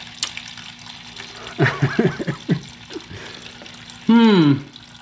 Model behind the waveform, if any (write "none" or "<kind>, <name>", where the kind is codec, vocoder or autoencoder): none